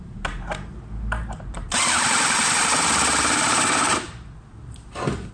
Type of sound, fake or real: real